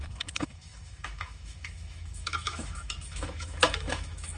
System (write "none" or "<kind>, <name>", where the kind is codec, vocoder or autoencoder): autoencoder, DAC-VAE